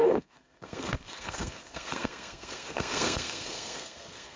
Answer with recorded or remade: remade